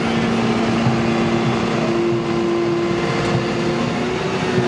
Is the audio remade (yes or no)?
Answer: no